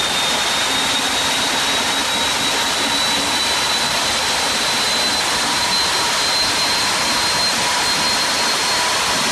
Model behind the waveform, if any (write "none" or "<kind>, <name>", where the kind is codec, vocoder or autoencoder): none